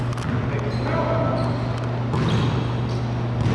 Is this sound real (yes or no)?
yes